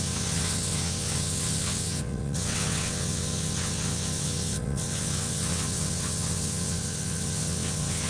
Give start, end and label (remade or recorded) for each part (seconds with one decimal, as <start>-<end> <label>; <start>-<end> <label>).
0.0-8.1 remade